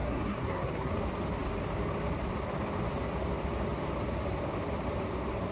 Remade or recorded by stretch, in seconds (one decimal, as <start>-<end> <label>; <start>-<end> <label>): 0.0-0.9 remade; 0.9-5.5 recorded